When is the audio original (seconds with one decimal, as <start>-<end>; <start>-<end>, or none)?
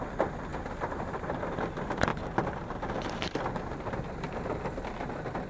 none